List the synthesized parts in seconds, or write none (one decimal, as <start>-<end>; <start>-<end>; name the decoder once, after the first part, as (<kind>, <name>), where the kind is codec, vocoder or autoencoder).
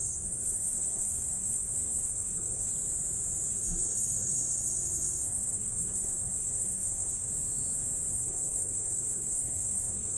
0.0-2.7 (codec, SNAC); 3.5-7.3; 8.1-10.2